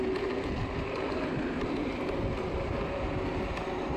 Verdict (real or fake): real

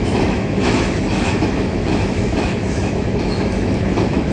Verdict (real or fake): fake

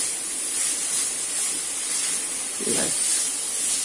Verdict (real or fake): real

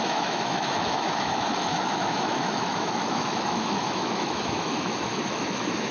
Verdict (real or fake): fake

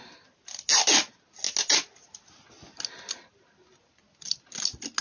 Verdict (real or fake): real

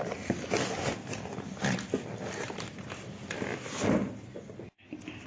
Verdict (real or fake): real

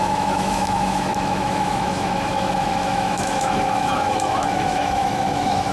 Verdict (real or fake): fake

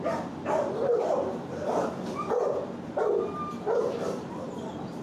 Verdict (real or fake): real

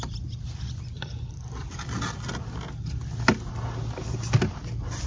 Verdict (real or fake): real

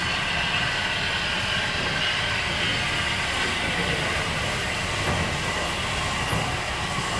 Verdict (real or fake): real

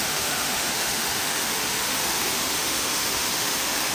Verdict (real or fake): fake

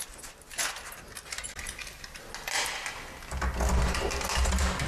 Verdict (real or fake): real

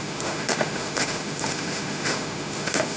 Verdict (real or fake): fake